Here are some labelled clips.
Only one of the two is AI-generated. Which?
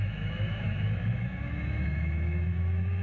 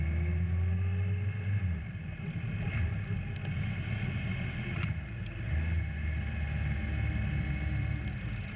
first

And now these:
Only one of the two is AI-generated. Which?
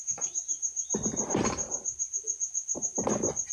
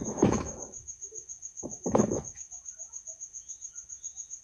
second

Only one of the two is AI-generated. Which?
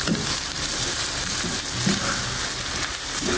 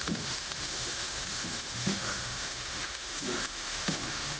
second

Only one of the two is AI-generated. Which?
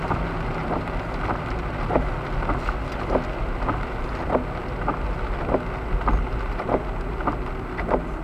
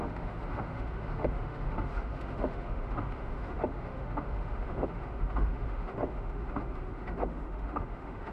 second